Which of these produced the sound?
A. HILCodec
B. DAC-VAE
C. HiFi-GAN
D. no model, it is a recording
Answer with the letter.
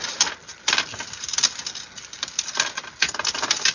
D